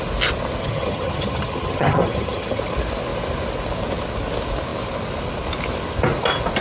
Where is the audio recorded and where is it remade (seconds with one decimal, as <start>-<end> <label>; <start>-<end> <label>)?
0.0-0.6 recorded; 0.6-2.6 remade; 2.6-6.6 recorded

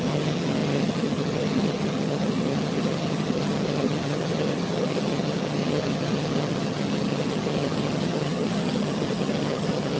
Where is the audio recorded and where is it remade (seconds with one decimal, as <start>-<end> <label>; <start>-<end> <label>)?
0.0-10.0 remade

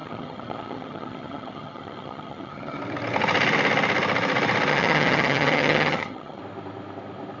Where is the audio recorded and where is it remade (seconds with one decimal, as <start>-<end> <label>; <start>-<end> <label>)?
0.0-2.8 remade; 2.8-4.7 recorded; 4.7-6.4 remade; 6.4-7.4 recorded

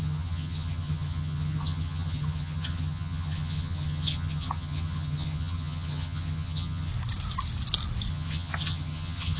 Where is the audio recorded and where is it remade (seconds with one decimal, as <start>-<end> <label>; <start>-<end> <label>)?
0.0-6.9 remade; 6.9-8.1 recorded; 8.1-9.4 remade

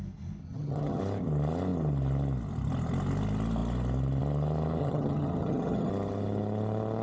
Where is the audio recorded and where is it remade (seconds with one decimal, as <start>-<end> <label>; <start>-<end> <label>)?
0.0-0.4 recorded; 0.4-1.0 remade; 1.0-4.8 recorded; 4.8-5.9 remade; 5.9-7.0 recorded

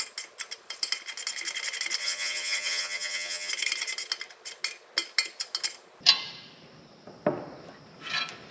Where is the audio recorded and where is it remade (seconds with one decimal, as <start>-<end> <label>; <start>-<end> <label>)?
0.0-2.0 recorded; 2.0-3.5 remade; 3.5-8.5 recorded

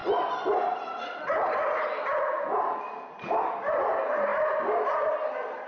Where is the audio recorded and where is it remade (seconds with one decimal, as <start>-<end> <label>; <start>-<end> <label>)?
0.0-5.7 recorded

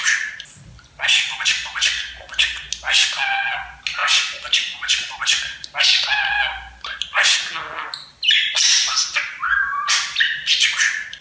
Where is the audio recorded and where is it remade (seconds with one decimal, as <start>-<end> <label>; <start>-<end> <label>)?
0.0-11.2 recorded